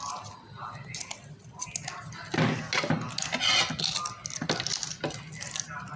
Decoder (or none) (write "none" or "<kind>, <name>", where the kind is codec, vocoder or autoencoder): none